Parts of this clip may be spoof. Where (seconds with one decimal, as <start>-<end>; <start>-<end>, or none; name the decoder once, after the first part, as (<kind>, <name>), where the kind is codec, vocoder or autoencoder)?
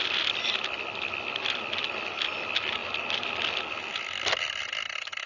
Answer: none